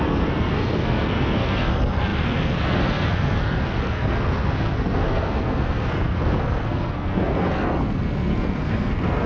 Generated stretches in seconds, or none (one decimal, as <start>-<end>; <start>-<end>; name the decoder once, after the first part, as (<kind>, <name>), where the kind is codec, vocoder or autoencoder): 0.0-9.3 (codec, SNAC)